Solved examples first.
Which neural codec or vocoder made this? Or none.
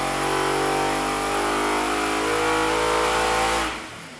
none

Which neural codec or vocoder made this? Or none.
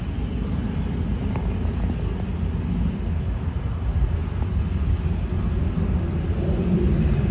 none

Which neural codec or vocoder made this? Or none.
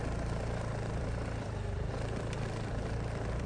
vocoder, BigVGAN v2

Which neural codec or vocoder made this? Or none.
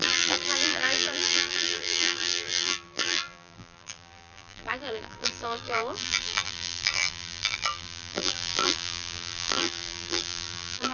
vocoder, BigVGAN v2